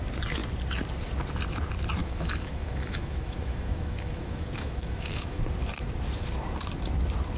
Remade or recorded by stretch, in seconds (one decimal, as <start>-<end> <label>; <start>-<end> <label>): 0.0-2.0 recorded; 2.0-5.4 remade; 5.4-7.4 recorded